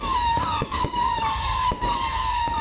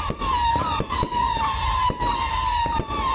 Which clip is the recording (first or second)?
second